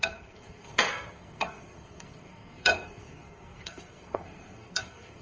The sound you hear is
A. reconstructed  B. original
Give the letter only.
A